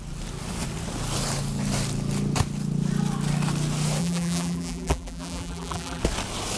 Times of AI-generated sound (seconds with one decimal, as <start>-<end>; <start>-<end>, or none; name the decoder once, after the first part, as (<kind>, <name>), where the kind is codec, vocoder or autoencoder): 4.0-6.0 (vocoder, BigVGAN v2)